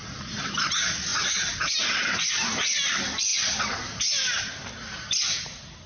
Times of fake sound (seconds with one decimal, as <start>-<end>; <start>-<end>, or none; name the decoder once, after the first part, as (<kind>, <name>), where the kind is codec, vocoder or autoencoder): none